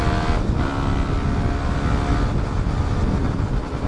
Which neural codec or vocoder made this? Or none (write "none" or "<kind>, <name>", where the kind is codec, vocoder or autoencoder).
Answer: none